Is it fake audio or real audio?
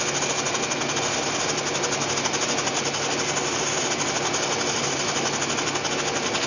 real